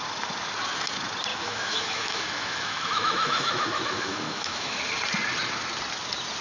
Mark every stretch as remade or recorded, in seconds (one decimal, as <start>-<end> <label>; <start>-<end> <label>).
0.0-1.3 recorded; 1.3-4.8 remade; 4.8-6.4 recorded